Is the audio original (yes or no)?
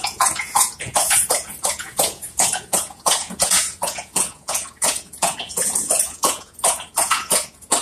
no